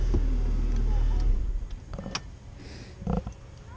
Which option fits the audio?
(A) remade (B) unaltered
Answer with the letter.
B